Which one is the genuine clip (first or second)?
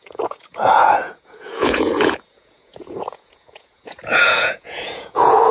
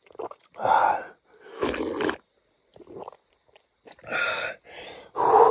second